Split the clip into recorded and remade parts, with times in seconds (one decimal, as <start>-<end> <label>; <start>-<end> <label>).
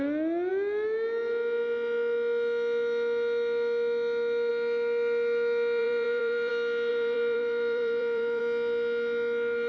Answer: 0.0-5.8 recorded; 5.8-6.5 remade; 6.5-6.9 recorded; 6.9-8.4 remade; 8.4-9.7 recorded